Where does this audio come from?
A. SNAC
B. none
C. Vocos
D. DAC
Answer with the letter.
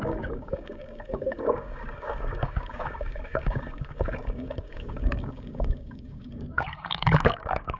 D